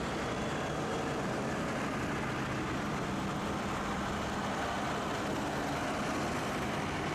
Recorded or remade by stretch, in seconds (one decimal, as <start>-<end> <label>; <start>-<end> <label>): 0.0-7.1 recorded